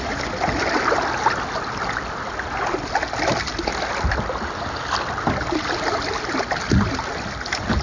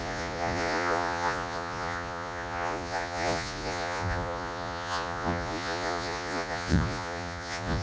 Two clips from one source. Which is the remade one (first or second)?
second